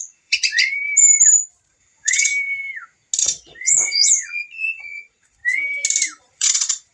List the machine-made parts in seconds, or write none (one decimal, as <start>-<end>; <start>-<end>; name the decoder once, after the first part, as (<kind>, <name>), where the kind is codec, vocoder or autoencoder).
0.0-0.7 (vocoder, Vocos); 1.7-2.3; 3.2-5.4; 6.2-6.9